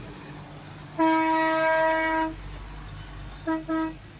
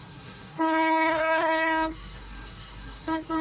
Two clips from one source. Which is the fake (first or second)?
second